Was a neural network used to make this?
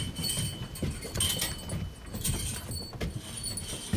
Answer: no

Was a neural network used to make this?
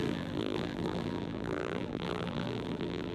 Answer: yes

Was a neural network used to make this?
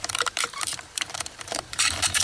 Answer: yes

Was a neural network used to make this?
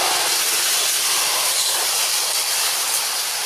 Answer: no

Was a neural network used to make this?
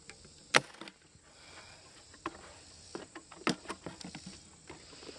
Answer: no